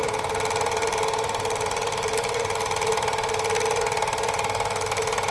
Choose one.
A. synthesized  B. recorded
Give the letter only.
B